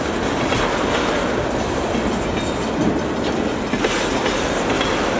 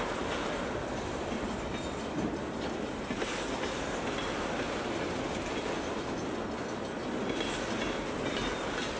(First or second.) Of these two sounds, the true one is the first